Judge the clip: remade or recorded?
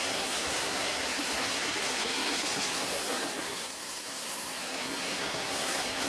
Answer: remade